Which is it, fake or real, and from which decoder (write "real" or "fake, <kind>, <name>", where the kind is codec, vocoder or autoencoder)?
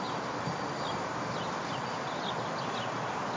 real